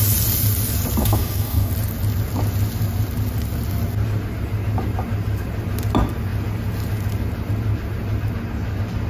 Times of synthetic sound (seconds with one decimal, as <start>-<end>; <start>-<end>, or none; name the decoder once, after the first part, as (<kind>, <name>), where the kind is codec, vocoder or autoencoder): 1.0-1.7 (codec, DAC)